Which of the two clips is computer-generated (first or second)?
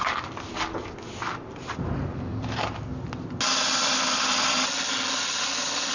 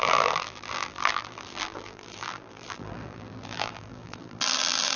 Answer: second